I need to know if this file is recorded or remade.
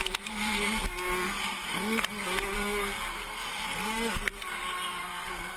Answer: remade